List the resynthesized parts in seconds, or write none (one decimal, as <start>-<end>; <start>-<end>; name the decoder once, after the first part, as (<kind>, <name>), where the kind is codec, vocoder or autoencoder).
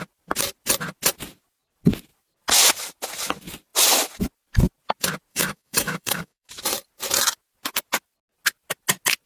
5.3-6.5 (codec, DAC)